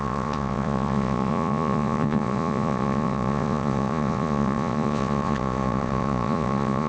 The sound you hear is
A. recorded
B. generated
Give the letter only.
B